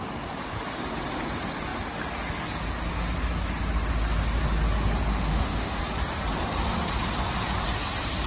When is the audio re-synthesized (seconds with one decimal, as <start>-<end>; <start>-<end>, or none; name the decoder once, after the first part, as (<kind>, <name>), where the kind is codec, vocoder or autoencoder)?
5.1-5.8 (autoencoder, DAC-VAE)